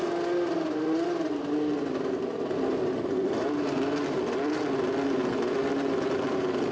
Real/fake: real